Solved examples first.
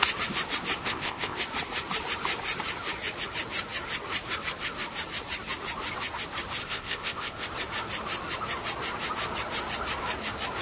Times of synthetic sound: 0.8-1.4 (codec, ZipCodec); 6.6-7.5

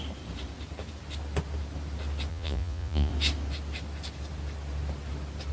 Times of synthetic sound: 2.3-3.1 (vocoder, Vocos)

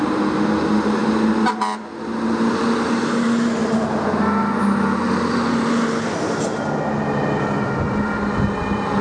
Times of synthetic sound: none

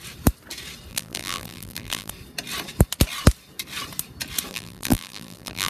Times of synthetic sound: 0.9-2.1 (vocoder, BigVGAN v2); 4.5-5.7